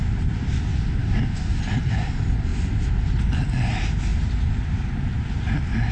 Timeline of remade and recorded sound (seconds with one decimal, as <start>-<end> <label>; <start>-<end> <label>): 0.0-1.0 recorded; 1.0-1.6 remade; 1.6-5.9 recorded

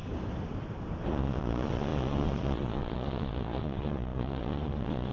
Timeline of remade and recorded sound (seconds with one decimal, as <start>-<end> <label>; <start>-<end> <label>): 0.0-1.1 recorded; 1.1-5.1 remade

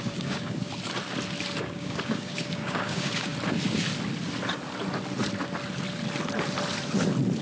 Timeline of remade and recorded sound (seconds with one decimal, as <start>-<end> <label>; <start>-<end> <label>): 0.0-0.7 remade; 0.7-1.6 recorded; 1.6-3.3 remade; 3.3-7.4 recorded

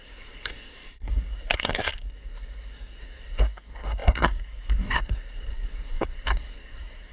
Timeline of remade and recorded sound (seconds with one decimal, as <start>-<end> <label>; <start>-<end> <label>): 0.0-7.1 remade

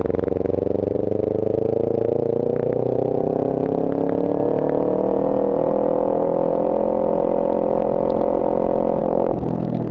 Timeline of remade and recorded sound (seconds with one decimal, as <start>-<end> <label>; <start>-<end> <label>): 0.0-9.0 recorded; 9.0-9.9 remade